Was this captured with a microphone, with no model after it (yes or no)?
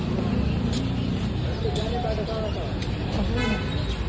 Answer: yes